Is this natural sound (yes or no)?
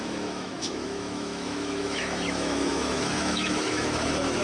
no